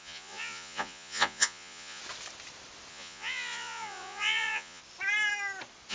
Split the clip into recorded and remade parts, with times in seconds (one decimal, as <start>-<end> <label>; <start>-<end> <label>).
0.0-2.0 remade; 2.0-2.9 recorded; 2.9-4.8 remade; 4.8-5.9 recorded